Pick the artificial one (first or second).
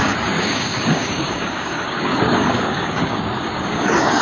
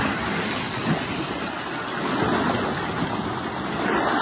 first